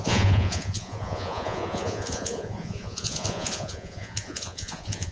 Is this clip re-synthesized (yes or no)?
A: yes